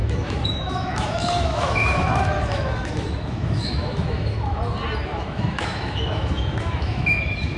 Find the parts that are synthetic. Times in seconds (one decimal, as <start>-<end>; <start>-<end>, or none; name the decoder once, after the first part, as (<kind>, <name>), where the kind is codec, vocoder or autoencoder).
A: 0.0-4.6 (autoencoder, DAC-VAE); 5.1-7.6